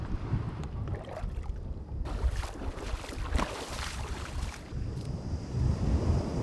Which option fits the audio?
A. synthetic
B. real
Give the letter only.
B